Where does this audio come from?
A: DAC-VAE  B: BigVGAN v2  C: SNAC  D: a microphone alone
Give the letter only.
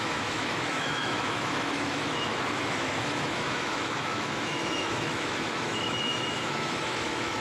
A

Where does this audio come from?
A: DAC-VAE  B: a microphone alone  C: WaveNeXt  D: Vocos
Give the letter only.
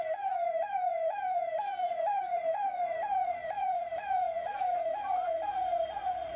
D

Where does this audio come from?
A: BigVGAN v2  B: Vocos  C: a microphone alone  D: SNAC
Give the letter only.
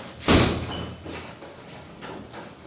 C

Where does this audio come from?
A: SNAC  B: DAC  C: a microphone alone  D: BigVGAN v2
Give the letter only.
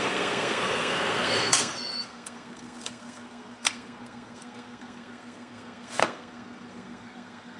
A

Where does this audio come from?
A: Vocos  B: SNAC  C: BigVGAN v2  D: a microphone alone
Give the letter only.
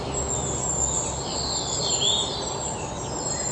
D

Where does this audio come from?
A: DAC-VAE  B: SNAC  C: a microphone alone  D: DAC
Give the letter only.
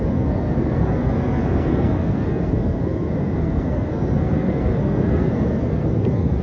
B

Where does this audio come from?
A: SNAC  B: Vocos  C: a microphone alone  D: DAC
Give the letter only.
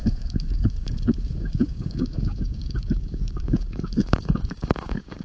D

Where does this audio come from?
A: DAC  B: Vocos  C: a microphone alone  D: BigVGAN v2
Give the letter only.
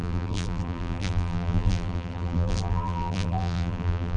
D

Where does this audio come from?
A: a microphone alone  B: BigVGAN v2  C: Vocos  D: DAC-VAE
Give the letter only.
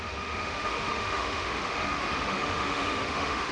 D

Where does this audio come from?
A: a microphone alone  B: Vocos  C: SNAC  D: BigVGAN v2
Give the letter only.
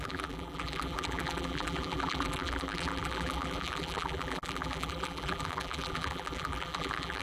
D